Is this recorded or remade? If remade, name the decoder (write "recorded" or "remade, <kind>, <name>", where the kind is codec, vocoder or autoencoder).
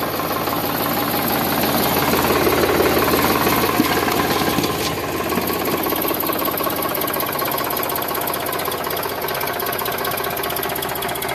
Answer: recorded